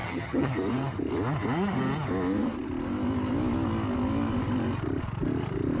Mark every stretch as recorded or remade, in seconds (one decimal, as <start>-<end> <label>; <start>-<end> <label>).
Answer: 0.0-0.5 remade; 0.5-5.8 recorded